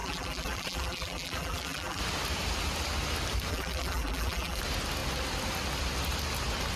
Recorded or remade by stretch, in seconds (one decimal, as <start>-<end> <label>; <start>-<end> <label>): 0.0-2.0 remade; 2.0-3.5 recorded; 3.5-4.6 remade; 4.6-6.8 recorded